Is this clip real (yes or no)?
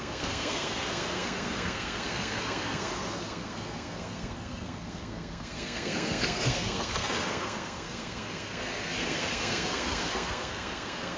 no